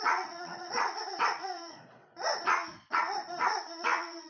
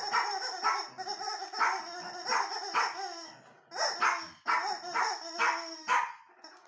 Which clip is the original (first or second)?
second